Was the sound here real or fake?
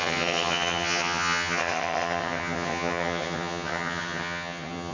fake